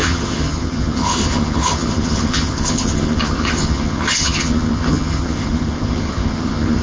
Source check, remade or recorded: remade